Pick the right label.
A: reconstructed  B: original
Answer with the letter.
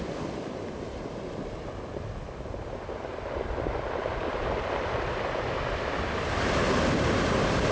B